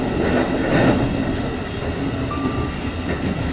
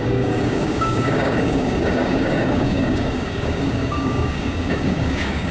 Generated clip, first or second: second